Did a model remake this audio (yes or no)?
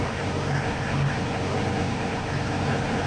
yes